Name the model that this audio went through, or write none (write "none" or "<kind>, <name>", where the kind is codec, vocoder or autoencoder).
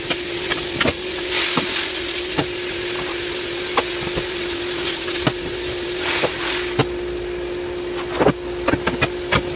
none